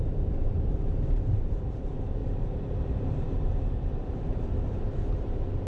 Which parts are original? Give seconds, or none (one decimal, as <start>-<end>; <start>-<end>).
none